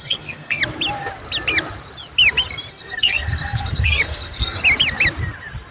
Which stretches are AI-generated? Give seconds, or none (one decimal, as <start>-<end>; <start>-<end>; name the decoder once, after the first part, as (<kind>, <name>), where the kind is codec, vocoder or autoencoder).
0.0-0.6 (codec, SNAC); 2.7-4.6